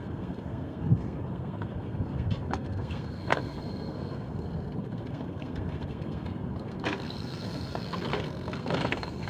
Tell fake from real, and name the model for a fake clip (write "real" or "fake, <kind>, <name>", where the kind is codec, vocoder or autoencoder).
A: fake, codec, SNAC